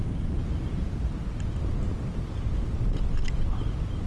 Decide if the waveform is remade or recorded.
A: recorded